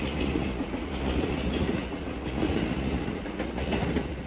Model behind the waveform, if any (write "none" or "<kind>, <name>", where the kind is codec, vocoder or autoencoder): vocoder, Vocos